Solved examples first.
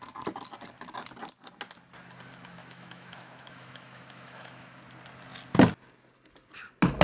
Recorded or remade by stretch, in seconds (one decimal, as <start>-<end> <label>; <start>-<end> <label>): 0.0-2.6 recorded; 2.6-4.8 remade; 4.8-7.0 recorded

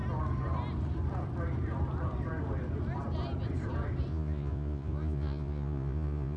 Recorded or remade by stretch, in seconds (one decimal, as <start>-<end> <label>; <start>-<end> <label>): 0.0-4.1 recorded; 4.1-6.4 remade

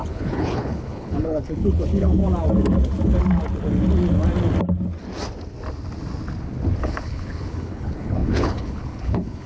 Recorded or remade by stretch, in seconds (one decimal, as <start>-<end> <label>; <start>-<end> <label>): 0.0-2.2 remade; 2.2-6.8 recorded; 6.8-9.5 remade

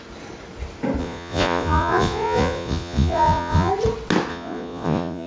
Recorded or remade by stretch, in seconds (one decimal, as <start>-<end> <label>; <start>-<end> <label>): 0.0-1.0 recorded; 1.0-3.7 remade; 3.7-4.3 recorded; 4.3-5.3 remade

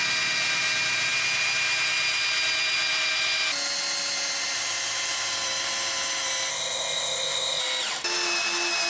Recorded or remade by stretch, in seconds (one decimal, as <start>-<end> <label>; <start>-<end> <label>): 0.0-6.5 recorded; 6.5-7.6 remade; 7.6-8.9 recorded

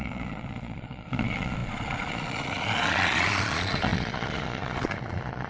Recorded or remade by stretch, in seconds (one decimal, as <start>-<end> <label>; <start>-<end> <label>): 0.0-5.5 remade

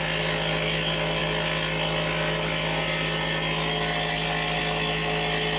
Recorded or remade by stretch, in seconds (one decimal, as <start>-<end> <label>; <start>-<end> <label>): 0.0-5.6 recorded